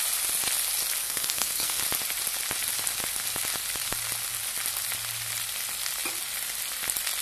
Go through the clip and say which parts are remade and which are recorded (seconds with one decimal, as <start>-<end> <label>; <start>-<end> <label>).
0.0-1.0 recorded; 1.0-1.8 remade; 1.8-7.2 recorded